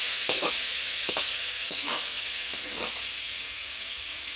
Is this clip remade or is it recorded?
remade